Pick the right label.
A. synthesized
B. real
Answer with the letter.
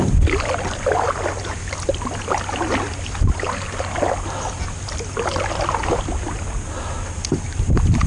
B